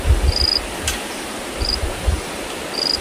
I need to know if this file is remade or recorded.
recorded